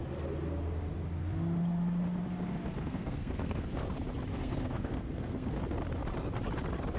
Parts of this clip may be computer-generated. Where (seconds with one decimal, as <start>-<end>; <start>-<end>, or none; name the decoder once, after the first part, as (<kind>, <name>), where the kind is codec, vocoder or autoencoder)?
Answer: 2.8-3.7 (codec, SNAC); 4.3-5.6